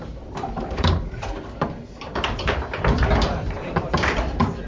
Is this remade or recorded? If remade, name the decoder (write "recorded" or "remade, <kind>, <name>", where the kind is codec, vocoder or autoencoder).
remade, vocoder, BigVGAN v2